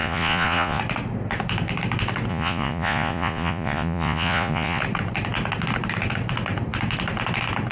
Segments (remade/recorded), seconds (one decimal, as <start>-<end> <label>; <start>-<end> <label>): 0.0-0.8 remade; 0.8-2.3 recorded; 2.3-4.8 remade; 4.8-7.7 recorded